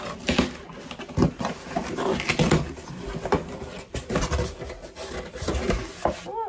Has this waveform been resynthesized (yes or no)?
no